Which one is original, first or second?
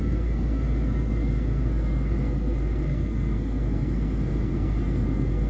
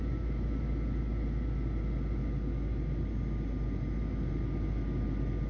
second